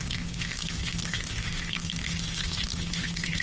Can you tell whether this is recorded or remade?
remade